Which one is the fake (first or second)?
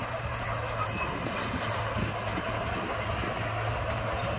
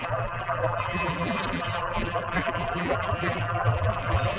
second